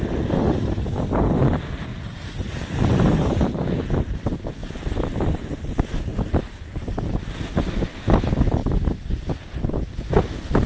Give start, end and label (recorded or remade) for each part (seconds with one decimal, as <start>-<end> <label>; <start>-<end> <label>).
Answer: 0.0-1.9 recorded; 1.9-3.7 remade; 3.7-10.7 recorded